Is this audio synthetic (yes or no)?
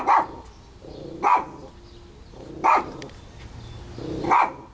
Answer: no